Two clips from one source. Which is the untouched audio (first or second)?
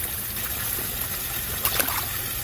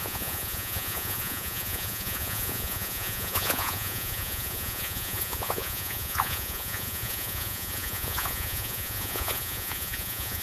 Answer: first